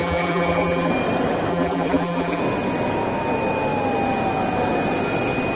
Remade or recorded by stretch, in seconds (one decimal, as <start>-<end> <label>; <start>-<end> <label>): 0.0-0.9 remade; 0.9-1.5 recorded; 1.5-2.4 remade; 2.4-5.5 recorded